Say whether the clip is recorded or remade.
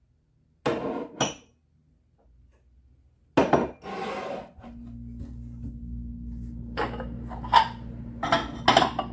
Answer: recorded